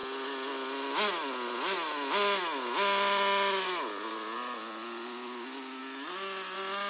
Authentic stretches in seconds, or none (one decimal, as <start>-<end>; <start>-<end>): 0.0-6.9